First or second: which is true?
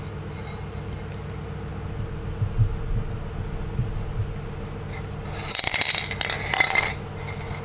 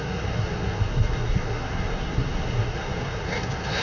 first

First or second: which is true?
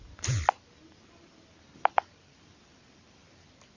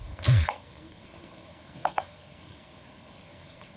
first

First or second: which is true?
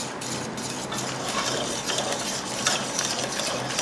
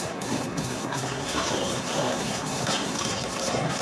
first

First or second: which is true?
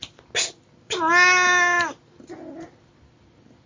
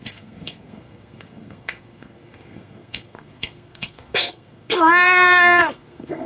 first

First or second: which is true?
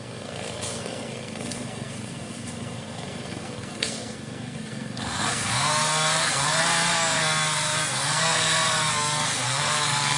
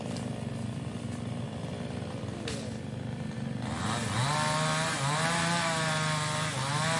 second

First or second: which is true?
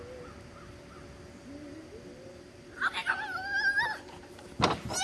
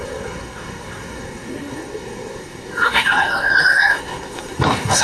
first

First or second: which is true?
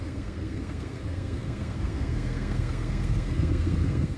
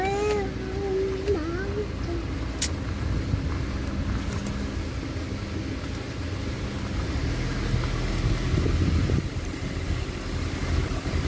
second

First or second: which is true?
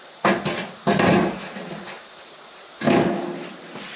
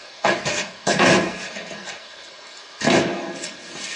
first